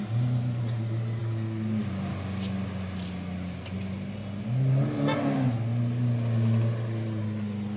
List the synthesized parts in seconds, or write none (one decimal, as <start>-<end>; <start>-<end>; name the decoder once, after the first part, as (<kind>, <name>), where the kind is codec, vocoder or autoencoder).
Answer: none